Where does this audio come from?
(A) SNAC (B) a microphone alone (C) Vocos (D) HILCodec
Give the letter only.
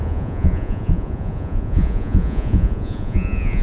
C